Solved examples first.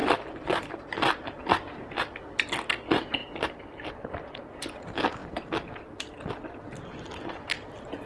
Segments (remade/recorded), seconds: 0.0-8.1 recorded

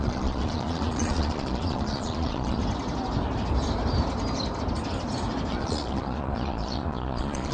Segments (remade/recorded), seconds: 0.0-2.6 remade; 2.6-5.5 recorded; 5.5-7.5 remade

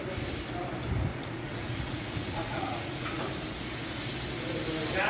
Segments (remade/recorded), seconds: 0.0-1.1 recorded; 1.1-3.2 remade; 3.2-5.1 recorded

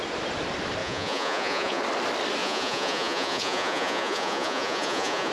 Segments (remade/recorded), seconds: 0.0-0.8 recorded; 0.8-1.8 remade; 1.8-2.4 recorded; 2.4-5.3 remade

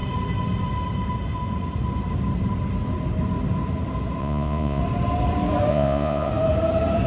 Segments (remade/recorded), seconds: 0.0-4.2 recorded; 4.2-4.8 remade; 4.8-5.7 recorded; 5.7-6.3 remade; 6.3-7.1 recorded

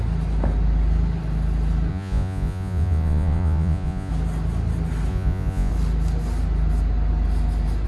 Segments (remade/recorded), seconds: 0.0-1.9 recorded; 1.9-4.1 remade; 4.1-5.1 recorded; 5.1-5.7 remade; 5.7-7.9 recorded

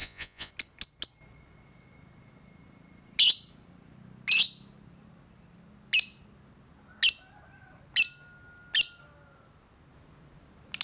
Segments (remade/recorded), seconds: 0.0-0.5 remade; 0.5-10.8 recorded

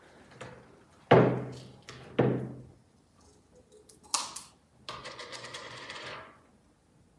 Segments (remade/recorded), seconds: 0.0-5.0 recorded; 5.0-6.5 remade; 6.5-7.2 recorded